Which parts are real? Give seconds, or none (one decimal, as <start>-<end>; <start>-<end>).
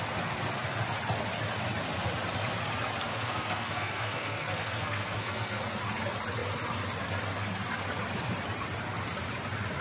0.0-3.1; 5.6-9.8